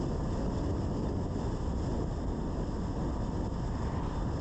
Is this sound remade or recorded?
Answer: recorded